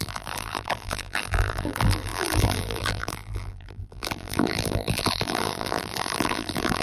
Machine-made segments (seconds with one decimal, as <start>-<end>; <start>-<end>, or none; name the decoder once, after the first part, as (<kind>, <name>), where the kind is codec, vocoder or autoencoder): 0.0-6.8 (vocoder, BigVGAN v2)